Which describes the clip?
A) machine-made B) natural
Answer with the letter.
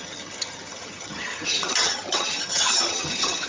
A